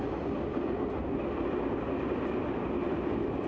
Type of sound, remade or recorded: recorded